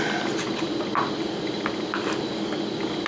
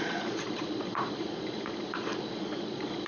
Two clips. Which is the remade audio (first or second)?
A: second